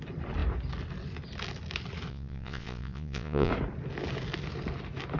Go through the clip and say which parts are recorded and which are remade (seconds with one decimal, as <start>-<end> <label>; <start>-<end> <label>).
0.0-2.1 recorded; 2.1-3.5 remade; 3.5-5.2 recorded